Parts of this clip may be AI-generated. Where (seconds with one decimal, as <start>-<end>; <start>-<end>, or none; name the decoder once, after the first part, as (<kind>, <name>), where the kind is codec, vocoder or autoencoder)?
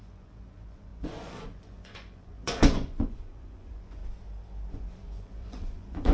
0.0-4.0 (vocoder, Vocos); 4.7-6.1